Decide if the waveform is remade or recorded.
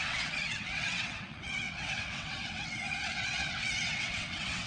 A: remade